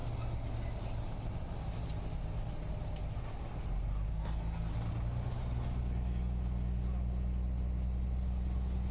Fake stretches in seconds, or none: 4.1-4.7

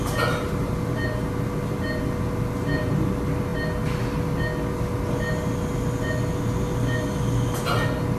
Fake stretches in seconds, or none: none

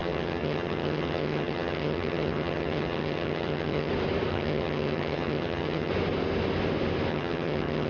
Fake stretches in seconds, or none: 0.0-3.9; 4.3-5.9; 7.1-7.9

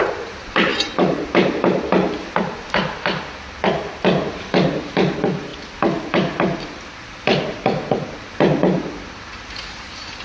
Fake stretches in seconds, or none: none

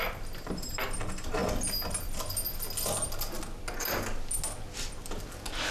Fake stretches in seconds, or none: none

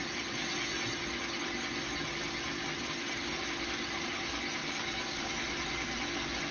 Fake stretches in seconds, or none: 4.6-5.3

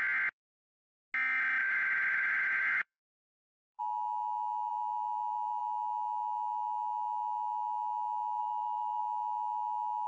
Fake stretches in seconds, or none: 1.6-3.8; 8.4-9.0

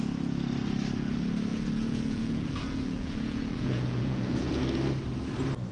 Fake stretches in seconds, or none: 1.5-4.6